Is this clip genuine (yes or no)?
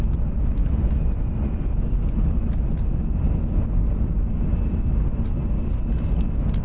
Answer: yes